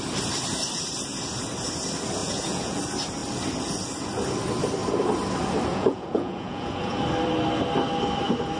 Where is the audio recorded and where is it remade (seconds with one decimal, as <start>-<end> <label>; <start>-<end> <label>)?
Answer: 0.0-2.2 recorded; 2.2-2.8 remade; 2.8-5.7 recorded; 5.7-7.0 remade; 7.0-8.6 recorded